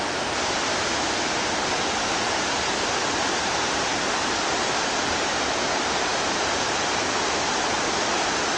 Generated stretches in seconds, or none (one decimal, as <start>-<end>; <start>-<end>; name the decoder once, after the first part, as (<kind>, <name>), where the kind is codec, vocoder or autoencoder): none